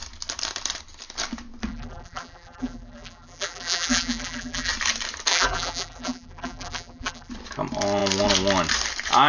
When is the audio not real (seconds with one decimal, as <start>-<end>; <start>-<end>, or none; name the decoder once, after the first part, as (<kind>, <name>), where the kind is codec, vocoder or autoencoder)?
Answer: 1.7-4.7 (vocoder, BigVGAN v2); 5.3-7.3